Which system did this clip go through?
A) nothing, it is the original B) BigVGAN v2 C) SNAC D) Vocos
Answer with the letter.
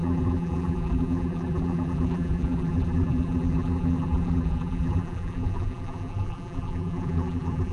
B